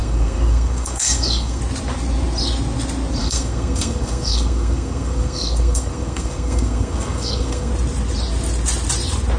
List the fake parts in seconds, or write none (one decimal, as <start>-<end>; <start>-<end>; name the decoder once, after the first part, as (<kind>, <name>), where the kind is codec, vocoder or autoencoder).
0.0-1.6 (codec, SNAC); 3.2-7.7